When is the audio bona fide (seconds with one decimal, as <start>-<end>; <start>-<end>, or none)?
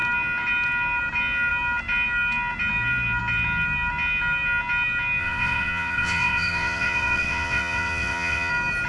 0.0-5.2; 8.5-8.9